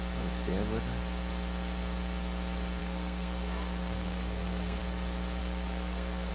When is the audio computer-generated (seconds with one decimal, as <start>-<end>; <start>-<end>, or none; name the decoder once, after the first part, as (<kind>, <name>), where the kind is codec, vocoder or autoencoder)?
2.8-4.8 (codec, SNAC); 5.4-6.3